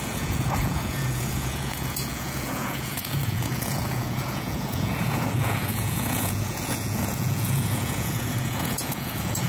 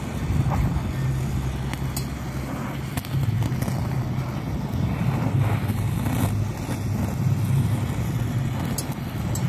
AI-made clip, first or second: first